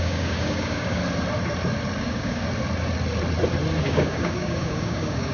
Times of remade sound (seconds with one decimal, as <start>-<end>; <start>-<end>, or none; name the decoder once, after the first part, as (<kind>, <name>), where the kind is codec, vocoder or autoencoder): 0.0-1.0 (codec, DAC); 2.0-2.4; 3.8-5.3